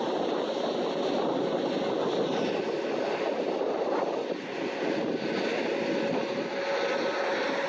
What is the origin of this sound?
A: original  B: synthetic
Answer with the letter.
A